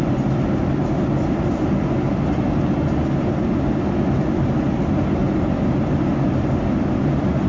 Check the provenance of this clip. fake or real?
real